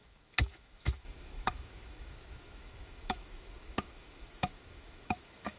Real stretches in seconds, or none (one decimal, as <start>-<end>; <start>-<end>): none